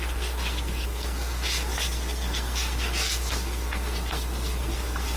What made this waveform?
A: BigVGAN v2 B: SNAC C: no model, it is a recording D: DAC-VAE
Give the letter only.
B